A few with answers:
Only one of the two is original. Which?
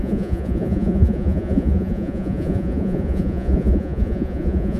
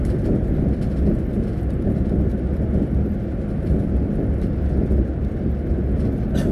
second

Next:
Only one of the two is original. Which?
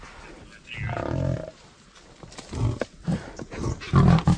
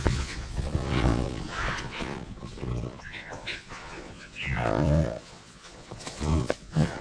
first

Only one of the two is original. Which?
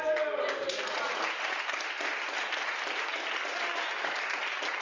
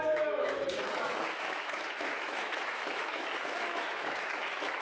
first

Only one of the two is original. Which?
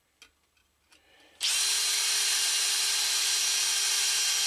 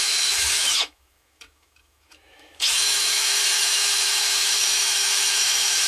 first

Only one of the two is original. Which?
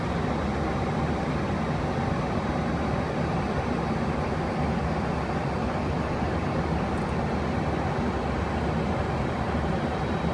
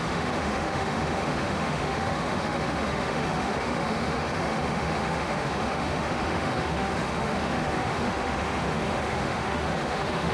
first